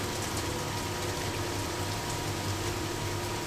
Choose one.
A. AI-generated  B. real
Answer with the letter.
B